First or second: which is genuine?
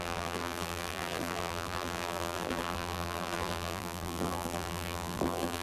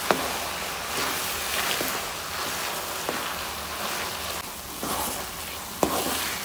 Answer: second